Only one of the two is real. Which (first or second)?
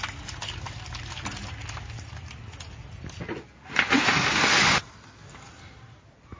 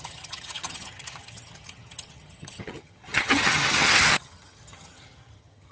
first